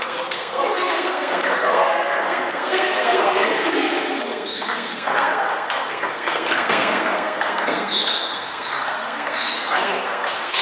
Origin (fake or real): fake